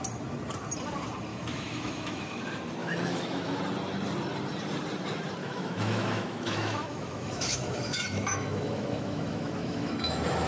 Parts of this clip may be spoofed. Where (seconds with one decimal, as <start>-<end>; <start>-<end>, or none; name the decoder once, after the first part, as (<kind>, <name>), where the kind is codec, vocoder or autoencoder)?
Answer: 1.3-2.4 (autoencoder, DAC-VAE); 2.8-3.6; 5.4-10.5